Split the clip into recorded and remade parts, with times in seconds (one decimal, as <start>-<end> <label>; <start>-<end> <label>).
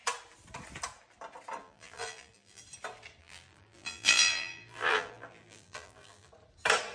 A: 0.0-1.6 recorded; 1.6-2.6 remade; 2.6-3.2 recorded; 3.2-6.3 remade; 6.3-6.9 recorded